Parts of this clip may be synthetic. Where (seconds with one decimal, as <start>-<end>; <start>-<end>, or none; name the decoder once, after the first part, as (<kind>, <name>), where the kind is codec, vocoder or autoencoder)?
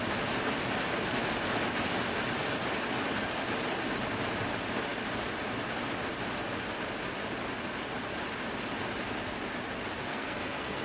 10.1-10.8 (codec, SNAC)